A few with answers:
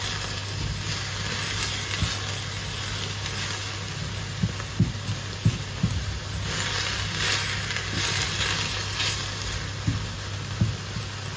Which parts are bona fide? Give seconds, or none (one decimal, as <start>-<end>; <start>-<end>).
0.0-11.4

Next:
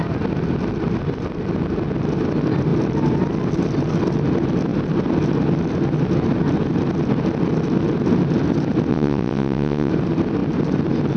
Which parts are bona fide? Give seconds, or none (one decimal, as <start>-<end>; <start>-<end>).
0.0-8.9; 9.9-11.2

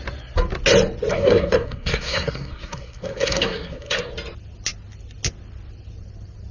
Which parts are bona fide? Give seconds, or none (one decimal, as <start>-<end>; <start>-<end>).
0.0-1.1; 4.1-6.5